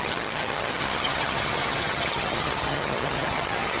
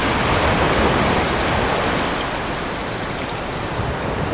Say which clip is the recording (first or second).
second